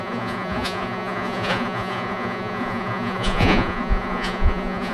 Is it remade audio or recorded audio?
remade